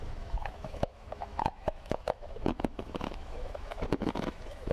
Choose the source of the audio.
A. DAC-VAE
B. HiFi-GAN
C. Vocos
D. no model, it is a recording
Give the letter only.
A